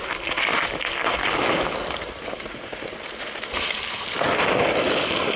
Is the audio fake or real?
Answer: real